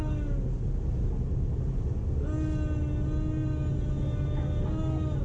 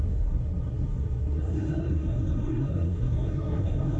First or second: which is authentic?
first